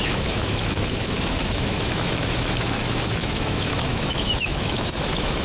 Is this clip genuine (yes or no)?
no